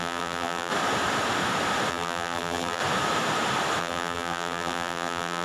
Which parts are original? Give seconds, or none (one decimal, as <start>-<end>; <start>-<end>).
0.7-1.9; 2.8-3.8